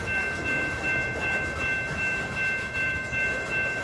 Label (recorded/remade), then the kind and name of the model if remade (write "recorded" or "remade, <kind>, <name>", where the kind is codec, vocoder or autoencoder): remade, autoencoder, DAC-VAE